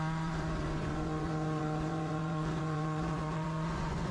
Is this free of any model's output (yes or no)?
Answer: no